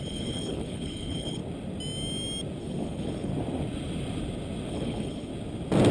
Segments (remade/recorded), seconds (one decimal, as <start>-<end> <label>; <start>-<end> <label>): 0.0-1.4 remade; 1.4-2.6 recorded; 2.6-3.3 remade; 3.3-4.7 recorded; 4.7-5.3 remade; 5.3-5.9 recorded